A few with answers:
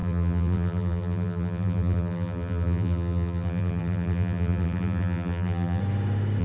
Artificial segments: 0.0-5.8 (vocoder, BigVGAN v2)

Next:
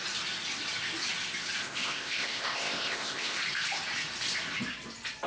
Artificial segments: 1.6-3.4 (codec, ZipCodec)

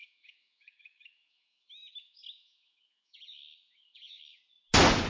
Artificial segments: 0.0-4.4 (autoencoder, DAC-VAE)